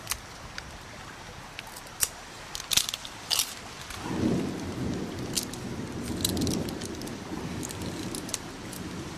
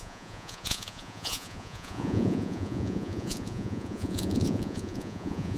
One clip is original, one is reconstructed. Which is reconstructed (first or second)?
second